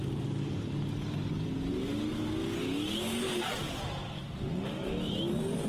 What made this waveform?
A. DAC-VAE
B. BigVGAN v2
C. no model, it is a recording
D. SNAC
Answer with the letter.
C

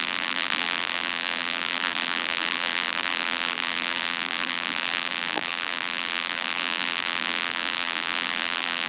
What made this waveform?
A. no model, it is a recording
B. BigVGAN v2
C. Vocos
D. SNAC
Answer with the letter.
B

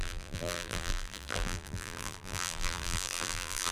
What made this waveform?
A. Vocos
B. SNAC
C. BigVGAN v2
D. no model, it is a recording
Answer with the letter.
C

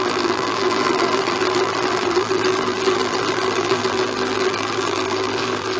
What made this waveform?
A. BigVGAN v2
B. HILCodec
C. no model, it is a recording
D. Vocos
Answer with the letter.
A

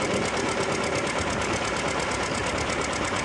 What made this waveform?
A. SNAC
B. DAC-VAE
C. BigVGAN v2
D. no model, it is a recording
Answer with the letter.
D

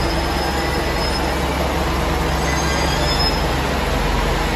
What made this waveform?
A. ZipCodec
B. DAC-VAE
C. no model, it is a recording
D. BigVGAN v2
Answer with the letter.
C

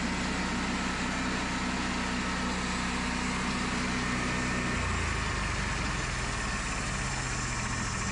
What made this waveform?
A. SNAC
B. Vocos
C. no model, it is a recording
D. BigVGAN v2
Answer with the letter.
C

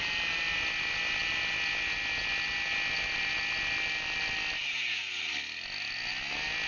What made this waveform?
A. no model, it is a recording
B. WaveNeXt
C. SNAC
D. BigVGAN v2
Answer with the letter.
A